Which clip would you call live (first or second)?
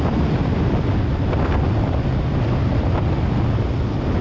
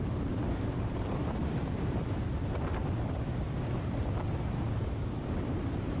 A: first